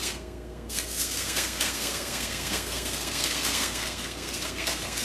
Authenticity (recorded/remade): remade